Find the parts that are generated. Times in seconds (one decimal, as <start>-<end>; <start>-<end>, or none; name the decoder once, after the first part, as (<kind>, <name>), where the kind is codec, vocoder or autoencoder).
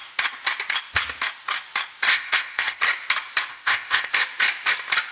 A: 2.1-2.8 (codec, ZipCodec); 3.5-4.1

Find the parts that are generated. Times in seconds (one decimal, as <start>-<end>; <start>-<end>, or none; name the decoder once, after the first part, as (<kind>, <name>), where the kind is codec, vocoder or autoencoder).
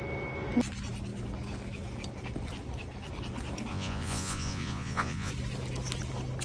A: 3.7-5.3 (vocoder, Vocos)